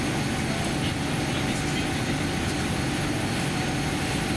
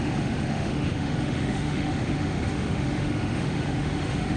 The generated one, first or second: second